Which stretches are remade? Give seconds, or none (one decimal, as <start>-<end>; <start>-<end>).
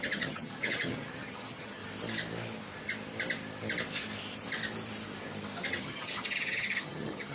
0.0-1.8; 5.6-7.3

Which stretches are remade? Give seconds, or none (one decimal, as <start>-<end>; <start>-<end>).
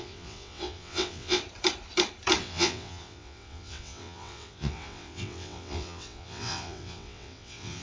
0.0-1.4; 2.4-7.8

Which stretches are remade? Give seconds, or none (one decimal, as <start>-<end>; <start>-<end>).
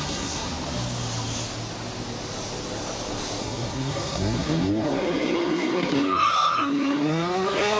0.0-0.5; 3.4-7.8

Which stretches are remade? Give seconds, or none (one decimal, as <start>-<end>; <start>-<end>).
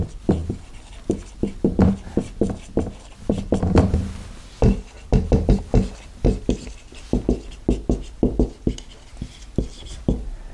none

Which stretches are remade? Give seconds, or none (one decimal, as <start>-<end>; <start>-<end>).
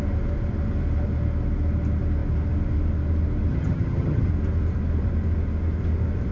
3.5-4.3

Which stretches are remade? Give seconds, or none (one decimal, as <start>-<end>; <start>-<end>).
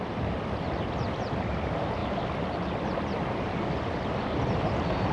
none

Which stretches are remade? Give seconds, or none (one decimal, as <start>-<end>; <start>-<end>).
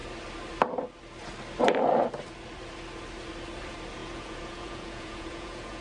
4.0-5.8